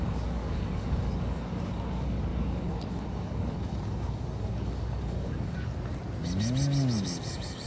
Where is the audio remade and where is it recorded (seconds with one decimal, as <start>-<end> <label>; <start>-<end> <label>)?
0.0-5.7 remade; 5.7-7.7 recorded